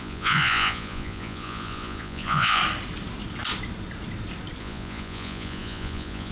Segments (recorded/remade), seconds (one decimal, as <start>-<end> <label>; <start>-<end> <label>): 0.0-2.6 remade; 2.6-4.6 recorded; 4.6-6.3 remade